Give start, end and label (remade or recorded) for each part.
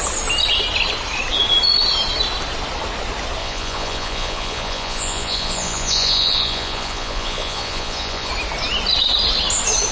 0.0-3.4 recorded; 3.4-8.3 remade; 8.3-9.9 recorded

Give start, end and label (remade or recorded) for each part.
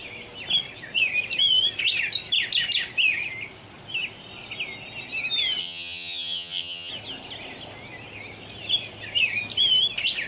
0.0-5.6 recorded; 5.6-6.9 remade; 6.9-10.3 recorded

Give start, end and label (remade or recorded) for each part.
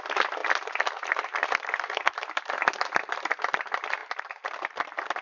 0.0-5.2 remade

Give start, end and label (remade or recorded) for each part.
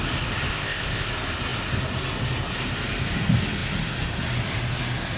0.0-0.5 recorded; 0.5-1.1 remade; 1.1-5.2 recorded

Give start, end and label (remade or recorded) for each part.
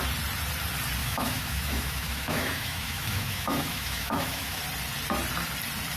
0.0-1.0 recorded; 1.0-4.6 remade; 4.6-6.0 recorded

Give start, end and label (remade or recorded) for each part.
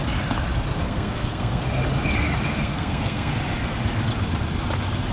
0.0-0.8 recorded; 0.8-1.6 remade; 1.6-2.5 recorded; 2.5-3.3 remade; 3.3-5.1 recorded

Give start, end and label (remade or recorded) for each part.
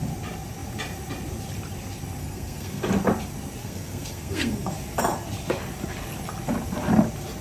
0.0-2.2 recorded; 2.2-2.8 remade; 2.8-3.6 recorded; 3.6-4.7 remade; 4.7-7.4 recorded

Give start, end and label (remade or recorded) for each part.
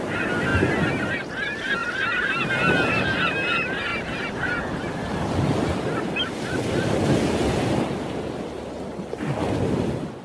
0.0-10.2 recorded